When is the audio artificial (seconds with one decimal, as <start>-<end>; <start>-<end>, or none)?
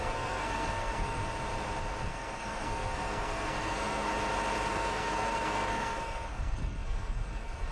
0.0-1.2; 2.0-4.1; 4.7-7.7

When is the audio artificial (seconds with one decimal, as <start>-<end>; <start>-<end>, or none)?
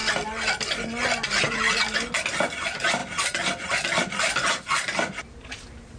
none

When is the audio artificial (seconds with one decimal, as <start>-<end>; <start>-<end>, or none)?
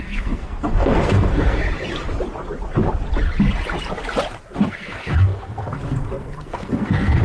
0.0-1.6; 4.7-7.2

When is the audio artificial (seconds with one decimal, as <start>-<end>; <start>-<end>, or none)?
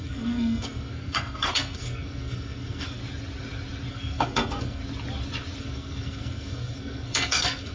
0.0-3.0; 3.9-4.8; 5.6-7.7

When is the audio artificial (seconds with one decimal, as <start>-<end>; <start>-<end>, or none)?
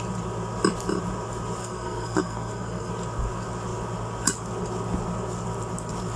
1.6-2.9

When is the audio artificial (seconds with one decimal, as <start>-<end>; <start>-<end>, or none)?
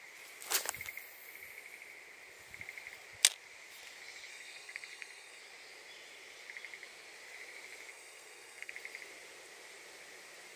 4.3-5.4; 7.9-8.7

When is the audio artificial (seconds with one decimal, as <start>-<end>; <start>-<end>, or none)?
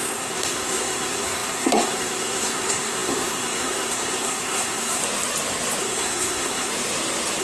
0.0-5.0; 5.8-6.7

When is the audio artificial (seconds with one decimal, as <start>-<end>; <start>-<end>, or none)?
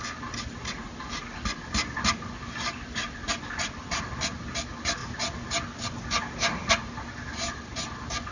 none